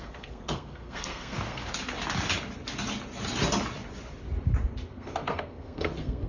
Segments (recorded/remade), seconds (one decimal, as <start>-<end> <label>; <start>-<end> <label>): 0.0-1.6 remade; 1.6-4.9 recorded; 4.9-6.3 remade